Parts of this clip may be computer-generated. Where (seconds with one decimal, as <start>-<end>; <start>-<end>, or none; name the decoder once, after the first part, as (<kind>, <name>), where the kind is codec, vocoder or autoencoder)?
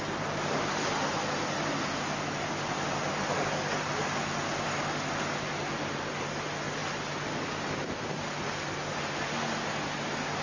none